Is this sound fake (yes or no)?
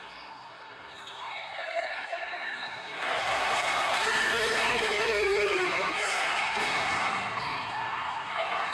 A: yes